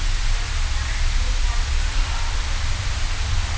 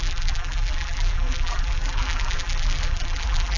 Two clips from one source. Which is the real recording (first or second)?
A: first